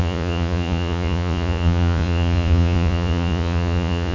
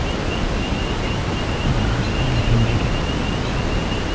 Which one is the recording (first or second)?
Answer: second